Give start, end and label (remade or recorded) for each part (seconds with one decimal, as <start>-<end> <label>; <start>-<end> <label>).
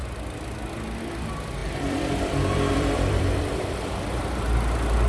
0.0-1.6 recorded; 1.6-3.9 remade; 3.9-5.1 recorded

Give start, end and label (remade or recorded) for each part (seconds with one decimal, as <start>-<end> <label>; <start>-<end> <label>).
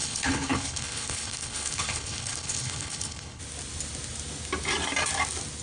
0.0-3.4 remade; 3.4-5.6 recorded